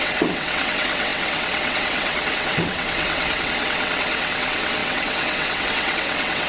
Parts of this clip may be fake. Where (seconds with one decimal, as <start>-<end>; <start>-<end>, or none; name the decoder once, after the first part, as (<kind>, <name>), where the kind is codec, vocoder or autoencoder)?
0.0-6.5 (vocoder, WaveNeXt)